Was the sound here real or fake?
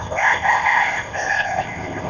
fake